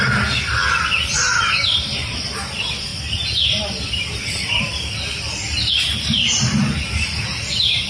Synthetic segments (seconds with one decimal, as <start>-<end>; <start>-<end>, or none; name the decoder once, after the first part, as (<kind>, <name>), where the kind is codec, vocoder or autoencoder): 0.0-2.9 (vocoder, BigVGAN v2); 4.2-7.9